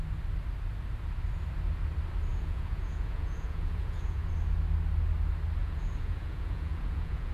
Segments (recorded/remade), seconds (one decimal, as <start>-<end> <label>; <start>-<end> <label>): 0.0-2.3 recorded; 2.3-4.3 remade; 4.3-5.6 recorded; 5.6-7.3 remade